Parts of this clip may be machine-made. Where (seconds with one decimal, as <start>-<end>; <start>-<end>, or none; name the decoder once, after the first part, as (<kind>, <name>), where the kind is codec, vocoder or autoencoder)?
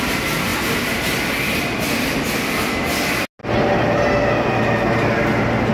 none